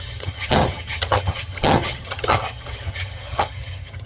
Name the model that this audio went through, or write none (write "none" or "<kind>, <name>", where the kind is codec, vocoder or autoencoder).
vocoder, HiFi-GAN